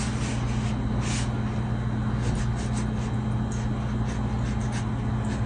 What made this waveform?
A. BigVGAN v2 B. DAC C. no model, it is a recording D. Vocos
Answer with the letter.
C